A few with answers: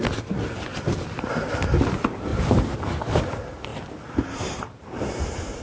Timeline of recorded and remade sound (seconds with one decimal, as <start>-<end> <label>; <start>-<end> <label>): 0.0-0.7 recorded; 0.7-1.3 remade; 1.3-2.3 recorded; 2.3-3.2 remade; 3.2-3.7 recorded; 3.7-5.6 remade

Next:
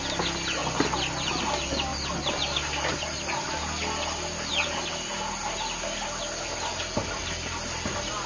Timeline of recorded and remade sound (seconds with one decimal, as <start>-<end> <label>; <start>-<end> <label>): 0.0-0.6 recorded; 0.6-1.5 remade; 1.5-7.2 recorded; 7.2-8.3 remade

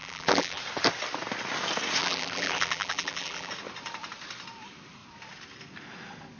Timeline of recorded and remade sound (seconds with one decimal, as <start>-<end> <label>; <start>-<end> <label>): 0.0-0.6 remade; 0.6-2.0 recorded; 2.0-3.5 remade; 3.5-6.4 recorded